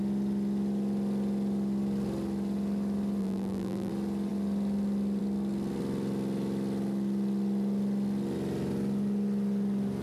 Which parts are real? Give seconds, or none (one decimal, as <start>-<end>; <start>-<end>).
0.0-3.2; 3.9-10.0